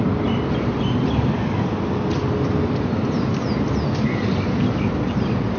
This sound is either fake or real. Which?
real